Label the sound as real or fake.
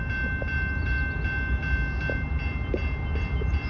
real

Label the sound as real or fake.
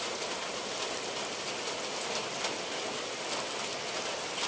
real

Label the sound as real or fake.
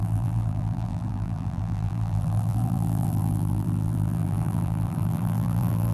fake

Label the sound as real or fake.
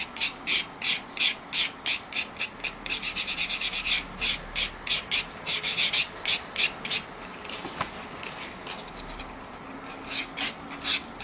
real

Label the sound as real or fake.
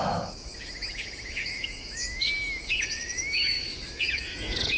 fake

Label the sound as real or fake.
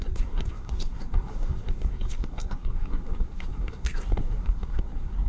fake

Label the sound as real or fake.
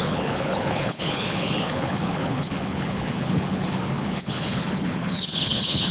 fake